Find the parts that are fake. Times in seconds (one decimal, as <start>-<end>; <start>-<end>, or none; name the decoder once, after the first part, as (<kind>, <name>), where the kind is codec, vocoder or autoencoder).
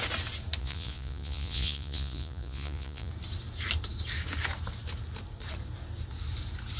0.6-3.1 (vocoder, Vocos)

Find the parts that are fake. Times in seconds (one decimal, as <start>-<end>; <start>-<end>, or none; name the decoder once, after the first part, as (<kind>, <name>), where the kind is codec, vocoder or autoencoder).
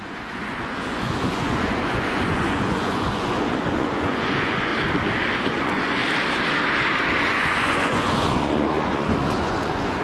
0.0-4.7 (vocoder, Vocos); 5.4-6.0; 7.2-10.0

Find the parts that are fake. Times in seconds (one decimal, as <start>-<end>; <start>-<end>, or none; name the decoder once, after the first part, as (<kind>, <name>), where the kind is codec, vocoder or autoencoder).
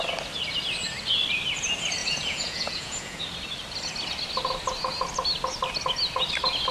2.0-3.2 (vocoder, Vocos)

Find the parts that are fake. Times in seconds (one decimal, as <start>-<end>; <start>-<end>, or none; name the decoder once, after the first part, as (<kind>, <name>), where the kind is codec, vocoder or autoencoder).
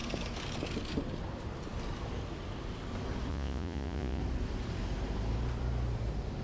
3.3-4.2 (vocoder, Vocos)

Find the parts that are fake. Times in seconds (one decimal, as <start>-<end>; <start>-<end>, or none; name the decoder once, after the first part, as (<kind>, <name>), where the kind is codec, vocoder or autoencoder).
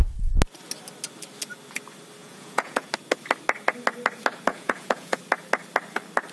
2.2-2.9 (vocoder, Vocos); 4.5-5.2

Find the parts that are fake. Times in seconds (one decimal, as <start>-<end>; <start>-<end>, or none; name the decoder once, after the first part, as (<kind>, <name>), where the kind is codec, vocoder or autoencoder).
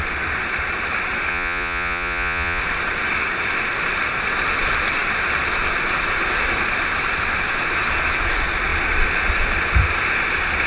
1.3-2.6 (vocoder, Vocos)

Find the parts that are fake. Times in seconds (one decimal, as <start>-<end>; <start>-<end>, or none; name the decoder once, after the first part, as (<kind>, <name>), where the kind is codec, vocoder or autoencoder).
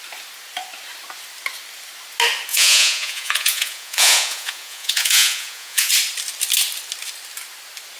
2.5-5.9 (vocoder, Vocos)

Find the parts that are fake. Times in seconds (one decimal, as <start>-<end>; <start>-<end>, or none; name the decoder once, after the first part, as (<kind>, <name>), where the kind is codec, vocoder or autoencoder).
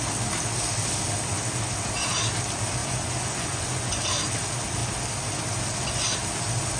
2.8-4.0 (vocoder, Vocos)